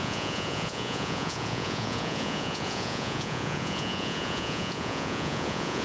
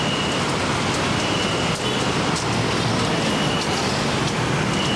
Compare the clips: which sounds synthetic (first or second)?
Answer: first